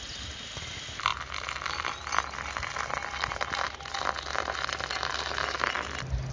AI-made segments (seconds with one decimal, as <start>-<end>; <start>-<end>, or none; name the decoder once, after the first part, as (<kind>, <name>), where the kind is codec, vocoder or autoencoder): 1.1-2.2 (vocoder, BigVGAN v2)